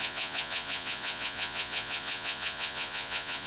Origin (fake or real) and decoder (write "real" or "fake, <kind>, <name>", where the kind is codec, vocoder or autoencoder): fake, vocoder, Vocos